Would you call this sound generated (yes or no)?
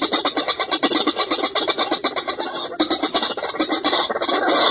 no